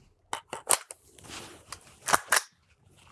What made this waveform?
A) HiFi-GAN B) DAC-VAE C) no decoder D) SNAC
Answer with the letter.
C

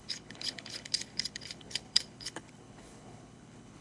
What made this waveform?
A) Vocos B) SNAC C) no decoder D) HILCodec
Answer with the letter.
D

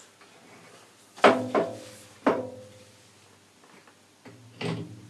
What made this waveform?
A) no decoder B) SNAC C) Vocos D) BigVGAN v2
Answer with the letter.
A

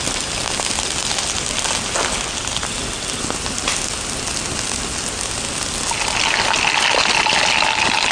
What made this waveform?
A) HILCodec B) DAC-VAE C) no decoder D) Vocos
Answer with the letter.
C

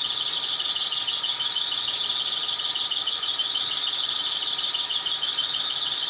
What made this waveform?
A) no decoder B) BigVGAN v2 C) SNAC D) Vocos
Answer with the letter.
A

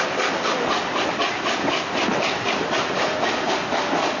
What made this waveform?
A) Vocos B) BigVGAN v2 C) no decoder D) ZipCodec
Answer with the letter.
C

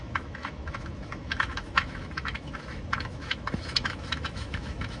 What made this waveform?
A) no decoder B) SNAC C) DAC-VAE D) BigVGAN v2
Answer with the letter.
C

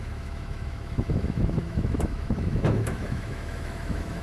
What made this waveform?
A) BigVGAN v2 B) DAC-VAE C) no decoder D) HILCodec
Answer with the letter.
B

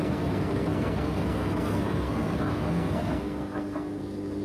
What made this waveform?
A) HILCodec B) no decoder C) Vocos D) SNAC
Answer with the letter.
D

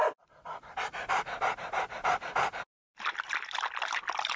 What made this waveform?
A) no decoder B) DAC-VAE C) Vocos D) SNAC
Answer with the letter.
A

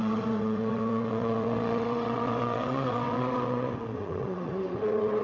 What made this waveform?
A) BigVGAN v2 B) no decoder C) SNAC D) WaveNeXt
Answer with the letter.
D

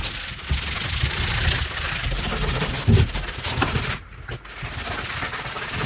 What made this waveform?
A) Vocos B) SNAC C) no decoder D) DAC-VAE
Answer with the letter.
C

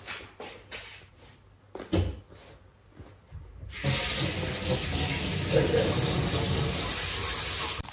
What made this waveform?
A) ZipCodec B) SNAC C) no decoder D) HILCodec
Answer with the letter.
C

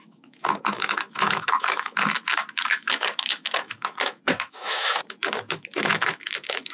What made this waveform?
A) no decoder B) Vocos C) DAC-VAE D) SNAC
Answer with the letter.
C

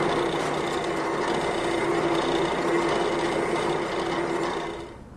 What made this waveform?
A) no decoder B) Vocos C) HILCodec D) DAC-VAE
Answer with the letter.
A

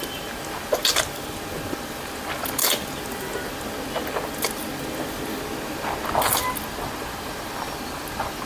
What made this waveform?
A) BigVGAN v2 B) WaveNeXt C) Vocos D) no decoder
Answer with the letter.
D